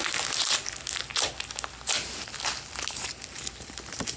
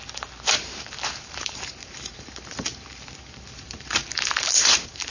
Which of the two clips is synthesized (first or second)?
second